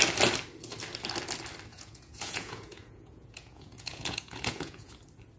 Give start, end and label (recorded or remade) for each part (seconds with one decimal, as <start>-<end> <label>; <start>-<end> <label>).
0.0-1.7 recorded; 1.7-4.9 remade; 4.9-5.4 recorded